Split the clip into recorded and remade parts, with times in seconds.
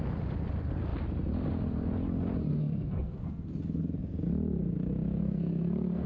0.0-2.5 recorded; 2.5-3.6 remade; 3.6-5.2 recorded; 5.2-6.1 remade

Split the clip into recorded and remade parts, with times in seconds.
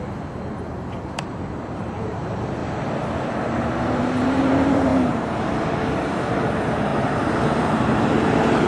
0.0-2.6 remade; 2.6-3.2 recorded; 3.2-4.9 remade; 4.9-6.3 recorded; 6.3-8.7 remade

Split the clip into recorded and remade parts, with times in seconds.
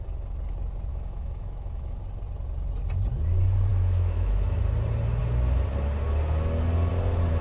0.0-0.9 recorded; 0.9-1.9 remade; 1.9-3.7 recorded; 3.7-4.6 remade; 4.6-7.4 recorded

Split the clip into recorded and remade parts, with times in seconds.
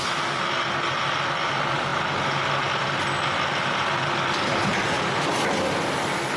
0.0-6.4 recorded